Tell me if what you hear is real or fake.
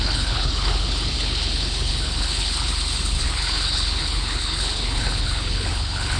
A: fake